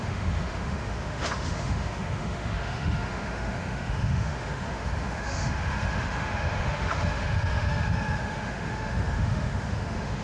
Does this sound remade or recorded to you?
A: remade